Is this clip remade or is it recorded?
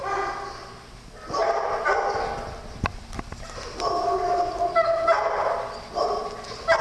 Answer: recorded